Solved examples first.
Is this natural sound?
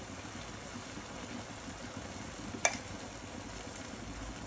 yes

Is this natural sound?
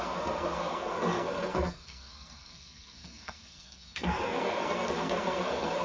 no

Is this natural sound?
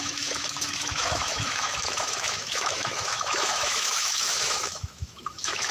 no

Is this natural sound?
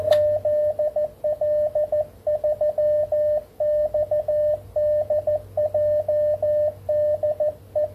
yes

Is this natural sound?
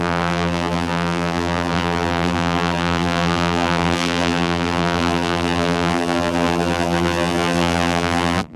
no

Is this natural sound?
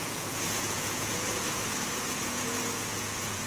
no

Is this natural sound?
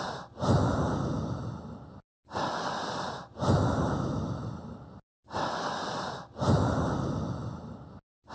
yes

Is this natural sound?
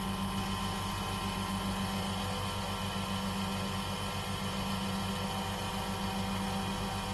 yes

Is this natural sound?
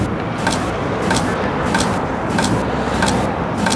yes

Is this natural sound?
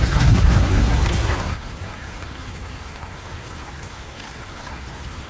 no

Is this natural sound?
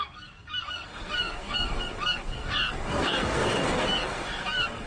no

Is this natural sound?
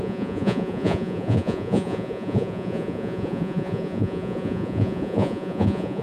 no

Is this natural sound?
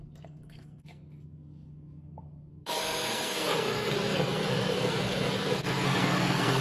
no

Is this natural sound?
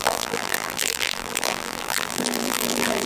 no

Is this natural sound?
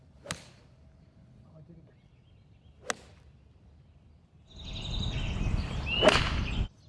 yes